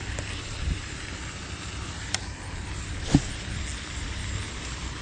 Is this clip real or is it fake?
real